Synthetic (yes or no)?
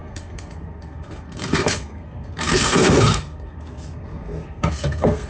yes